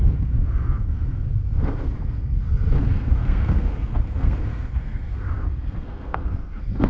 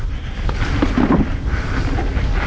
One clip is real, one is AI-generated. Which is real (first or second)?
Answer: second